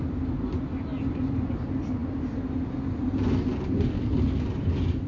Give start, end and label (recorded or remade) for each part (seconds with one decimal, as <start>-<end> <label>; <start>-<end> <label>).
0.0-5.1 recorded